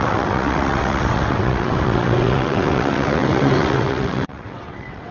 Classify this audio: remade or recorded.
remade